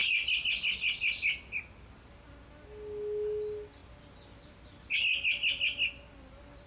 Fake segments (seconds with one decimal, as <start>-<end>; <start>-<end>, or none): none

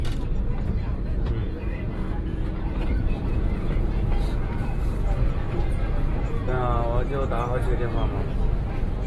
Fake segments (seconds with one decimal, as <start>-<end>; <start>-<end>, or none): 1.4-6.6

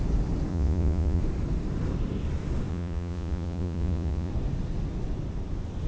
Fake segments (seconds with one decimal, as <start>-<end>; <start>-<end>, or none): 0.5-1.2; 2.7-4.3

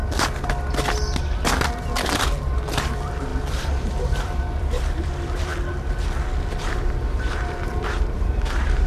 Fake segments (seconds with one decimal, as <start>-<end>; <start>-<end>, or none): 1.8-5.5; 6.6-8.9

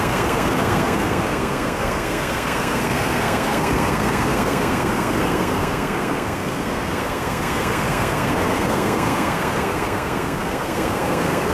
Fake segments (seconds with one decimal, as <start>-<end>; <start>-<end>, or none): 0.0-11.5

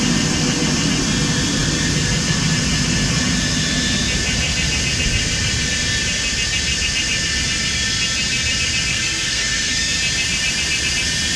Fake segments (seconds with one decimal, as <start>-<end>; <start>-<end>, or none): 8.9-10.0

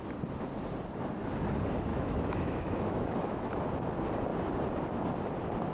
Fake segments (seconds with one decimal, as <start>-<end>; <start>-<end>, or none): 1.9-3.6

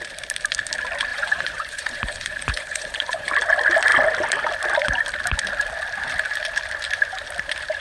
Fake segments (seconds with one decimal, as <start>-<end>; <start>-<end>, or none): 1.1-3.3